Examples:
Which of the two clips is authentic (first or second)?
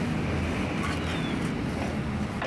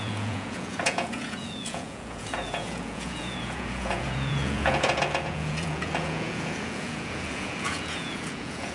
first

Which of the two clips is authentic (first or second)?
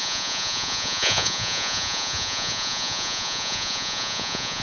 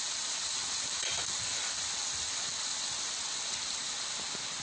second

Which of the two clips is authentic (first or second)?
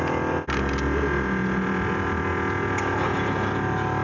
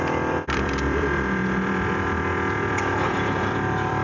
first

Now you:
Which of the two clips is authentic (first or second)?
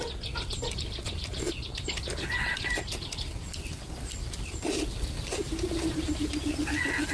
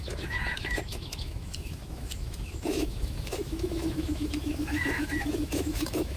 first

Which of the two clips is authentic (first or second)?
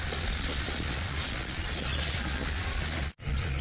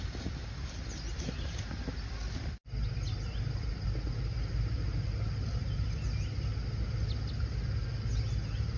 second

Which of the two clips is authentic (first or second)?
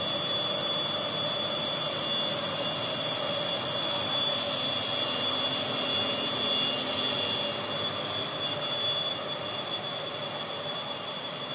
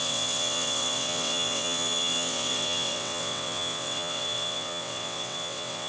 first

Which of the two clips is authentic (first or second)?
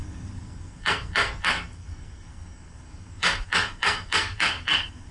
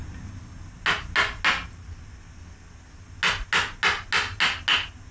second